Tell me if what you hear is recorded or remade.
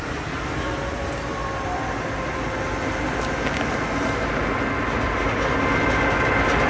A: recorded